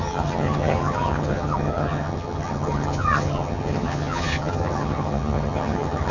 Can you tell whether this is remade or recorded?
remade